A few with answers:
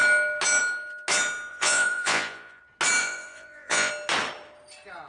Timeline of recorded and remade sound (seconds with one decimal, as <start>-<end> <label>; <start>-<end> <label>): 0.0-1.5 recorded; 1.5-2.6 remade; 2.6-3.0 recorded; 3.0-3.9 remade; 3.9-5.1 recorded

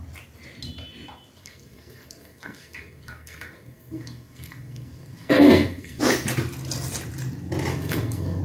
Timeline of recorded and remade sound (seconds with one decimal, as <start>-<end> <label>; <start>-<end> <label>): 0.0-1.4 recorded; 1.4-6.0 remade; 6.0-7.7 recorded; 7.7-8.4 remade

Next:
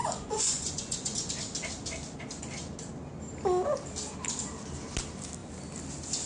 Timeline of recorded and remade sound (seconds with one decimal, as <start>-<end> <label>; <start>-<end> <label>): 0.0-1.3 remade; 1.3-6.3 recorded

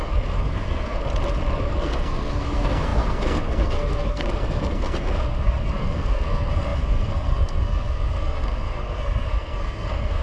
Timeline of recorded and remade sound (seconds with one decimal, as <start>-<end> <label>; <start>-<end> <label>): 0.0-1.0 remade; 1.0-1.6 recorded; 1.6-10.2 remade

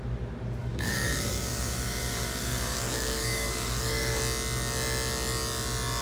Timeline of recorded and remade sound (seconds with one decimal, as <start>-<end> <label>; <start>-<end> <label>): 0.0-0.6 recorded; 0.6-4.2 remade; 4.2-6.0 recorded

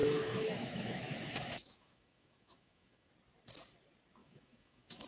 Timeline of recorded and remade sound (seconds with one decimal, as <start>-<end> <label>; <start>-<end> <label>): 0.0-3.1 remade; 3.1-4.2 recorded; 4.2-5.1 remade

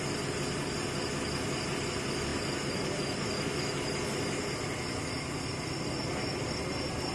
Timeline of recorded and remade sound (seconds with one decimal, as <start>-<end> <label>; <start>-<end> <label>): 0.0-7.1 recorded

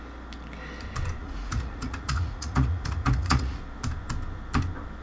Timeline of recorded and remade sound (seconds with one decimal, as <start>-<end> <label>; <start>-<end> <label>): 0.0-1.2 recorded; 1.2-3.6 remade; 3.6-5.0 recorded